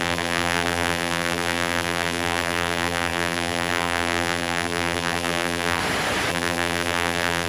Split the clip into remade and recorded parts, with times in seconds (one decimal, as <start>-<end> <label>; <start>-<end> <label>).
0.0-5.8 remade; 5.8-6.3 recorded; 6.3-7.5 remade